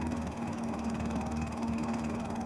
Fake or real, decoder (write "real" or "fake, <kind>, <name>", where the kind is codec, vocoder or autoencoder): fake, codec, DAC